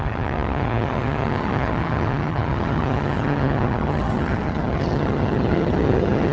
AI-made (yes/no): yes